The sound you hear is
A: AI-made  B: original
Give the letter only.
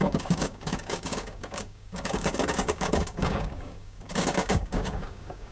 A